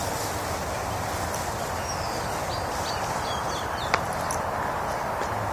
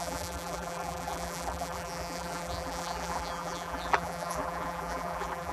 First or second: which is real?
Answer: first